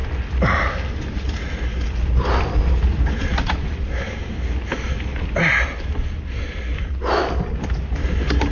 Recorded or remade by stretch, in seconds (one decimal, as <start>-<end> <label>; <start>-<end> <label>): 0.0-8.5 recorded